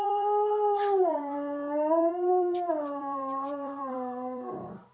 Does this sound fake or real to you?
fake